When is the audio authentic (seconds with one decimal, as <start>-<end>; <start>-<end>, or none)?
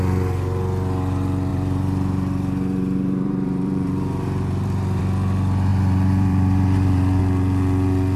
0.0-1.5; 5.0-5.7; 7.2-8.2